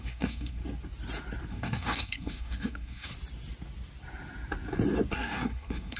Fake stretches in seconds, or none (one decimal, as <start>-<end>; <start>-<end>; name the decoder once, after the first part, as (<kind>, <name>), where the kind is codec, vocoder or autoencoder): 0.0-0.6 (codec, SNAC); 1.5-3.1; 5.1-6.0